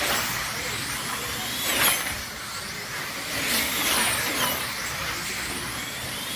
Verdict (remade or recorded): recorded